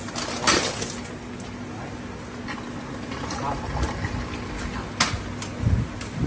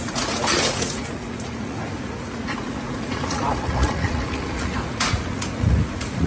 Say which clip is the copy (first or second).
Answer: second